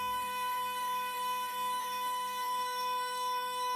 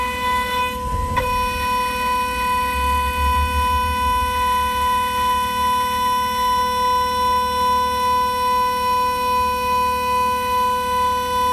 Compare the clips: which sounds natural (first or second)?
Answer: second